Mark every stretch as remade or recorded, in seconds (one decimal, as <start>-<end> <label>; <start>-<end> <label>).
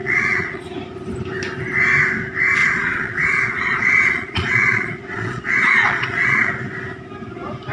0.0-0.6 remade; 0.6-2.6 recorded; 2.6-6.5 remade; 6.5-7.7 recorded